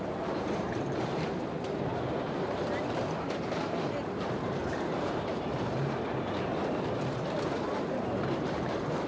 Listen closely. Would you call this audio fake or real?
fake